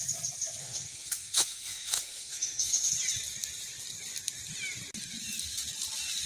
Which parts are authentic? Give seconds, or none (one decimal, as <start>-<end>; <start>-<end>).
0.0-0.6; 2.9-6.3